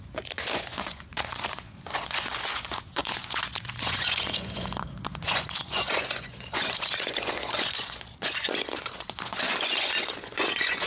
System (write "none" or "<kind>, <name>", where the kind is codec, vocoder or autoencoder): vocoder, Vocos